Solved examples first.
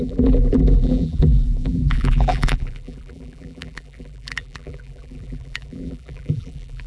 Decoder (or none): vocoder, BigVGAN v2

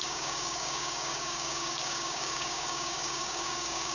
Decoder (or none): codec, DAC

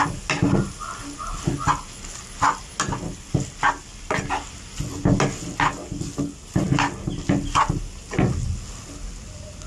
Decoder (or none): none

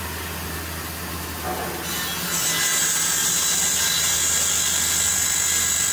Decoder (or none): none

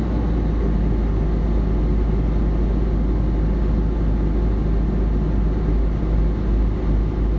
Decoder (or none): none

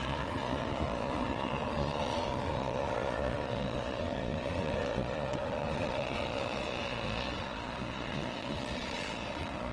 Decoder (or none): vocoder, Vocos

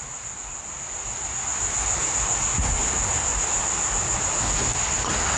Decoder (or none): none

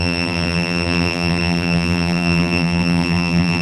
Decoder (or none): vocoder, BigVGAN v2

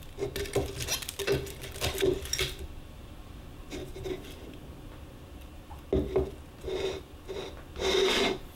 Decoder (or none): none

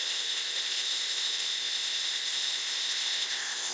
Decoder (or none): codec, ZipCodec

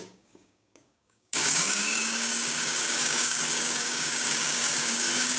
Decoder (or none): codec, DAC